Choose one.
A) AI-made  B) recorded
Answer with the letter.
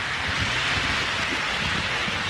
B